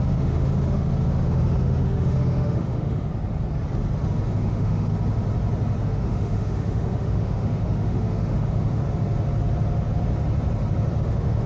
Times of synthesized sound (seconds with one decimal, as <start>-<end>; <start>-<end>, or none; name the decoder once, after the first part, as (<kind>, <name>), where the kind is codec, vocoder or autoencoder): 0.0-3.1 (autoencoder, DAC-VAE); 4.3-4.9; 5.8-8.8; 11.0-11.5